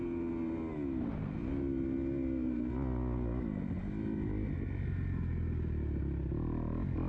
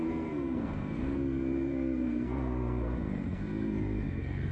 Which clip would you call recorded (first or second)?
first